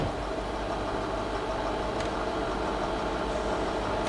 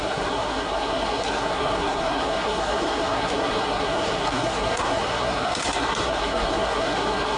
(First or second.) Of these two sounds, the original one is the first